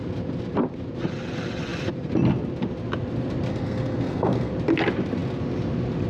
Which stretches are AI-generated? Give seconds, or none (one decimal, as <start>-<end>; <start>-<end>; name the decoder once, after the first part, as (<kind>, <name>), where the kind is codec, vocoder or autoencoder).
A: 3.5-4.5 (codec, SNAC)